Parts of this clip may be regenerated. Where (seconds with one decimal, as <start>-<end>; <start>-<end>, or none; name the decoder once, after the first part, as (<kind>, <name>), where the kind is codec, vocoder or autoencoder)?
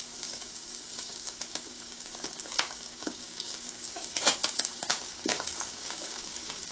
0.0-6.7 (codec, DAC)